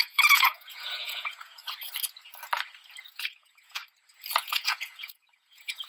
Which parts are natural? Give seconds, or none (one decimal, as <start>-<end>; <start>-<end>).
1.6-3.1; 3.8-4.4